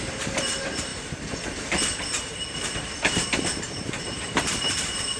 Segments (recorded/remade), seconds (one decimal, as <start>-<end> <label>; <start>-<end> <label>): 0.0-0.9 remade; 0.9-1.8 recorded; 1.8-5.2 remade